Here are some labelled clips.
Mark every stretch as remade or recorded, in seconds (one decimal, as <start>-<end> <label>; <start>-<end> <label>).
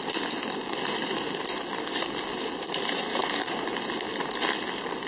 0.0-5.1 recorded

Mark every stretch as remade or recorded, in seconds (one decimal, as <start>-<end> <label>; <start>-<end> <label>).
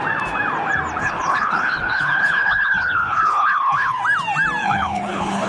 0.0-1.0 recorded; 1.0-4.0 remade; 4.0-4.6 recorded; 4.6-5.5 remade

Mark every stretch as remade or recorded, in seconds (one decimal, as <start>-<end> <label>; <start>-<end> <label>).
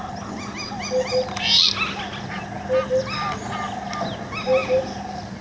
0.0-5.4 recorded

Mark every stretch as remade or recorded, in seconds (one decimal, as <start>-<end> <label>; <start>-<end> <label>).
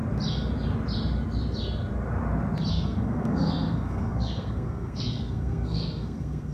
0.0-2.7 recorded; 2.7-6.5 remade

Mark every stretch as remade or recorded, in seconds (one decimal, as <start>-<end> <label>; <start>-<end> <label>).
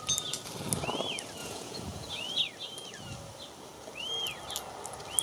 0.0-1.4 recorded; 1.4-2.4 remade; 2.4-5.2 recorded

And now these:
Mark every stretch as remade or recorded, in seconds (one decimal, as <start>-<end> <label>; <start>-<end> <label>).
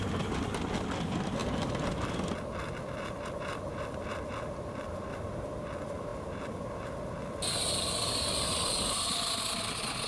0.0-1.4 recorded; 1.4-4.1 remade; 4.1-7.2 recorded; 7.2-8.5 remade; 8.5-10.1 recorded